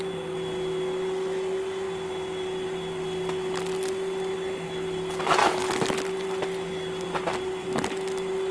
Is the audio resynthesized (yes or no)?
no